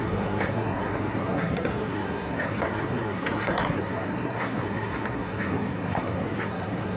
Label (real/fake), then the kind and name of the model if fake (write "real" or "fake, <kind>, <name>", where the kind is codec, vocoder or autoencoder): fake, codec, SNAC